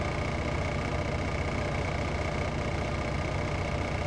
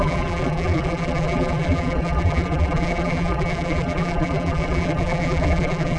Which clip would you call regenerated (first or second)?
second